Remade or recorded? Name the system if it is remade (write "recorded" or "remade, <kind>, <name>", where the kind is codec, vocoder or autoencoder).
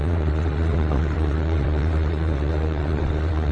remade, vocoder, WaveNeXt